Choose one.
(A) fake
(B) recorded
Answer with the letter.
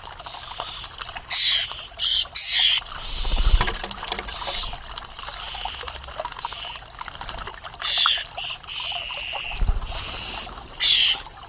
B